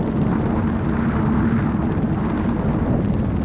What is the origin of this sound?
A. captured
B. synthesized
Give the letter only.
A